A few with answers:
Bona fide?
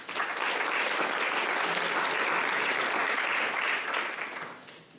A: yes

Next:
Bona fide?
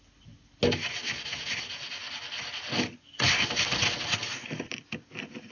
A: yes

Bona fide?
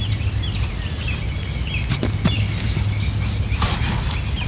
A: yes